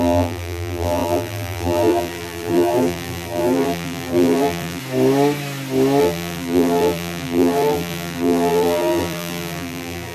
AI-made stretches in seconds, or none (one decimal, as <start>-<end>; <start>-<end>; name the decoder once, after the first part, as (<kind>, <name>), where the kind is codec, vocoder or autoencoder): 0.0-4.8 (vocoder, BigVGAN v2); 6.0-10.1